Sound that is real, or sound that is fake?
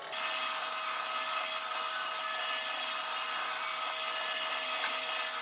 real